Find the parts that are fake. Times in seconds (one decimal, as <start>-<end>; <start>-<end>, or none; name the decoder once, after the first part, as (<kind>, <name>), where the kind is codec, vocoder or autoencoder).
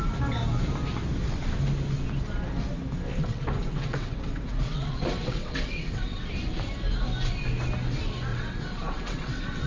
3.2-6.3 (vocoder, WaveNeXt); 8.3-9.7